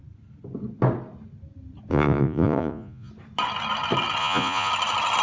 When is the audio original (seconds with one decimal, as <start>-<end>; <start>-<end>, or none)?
0.0-1.9; 3.1-4.2; 4.7-5.2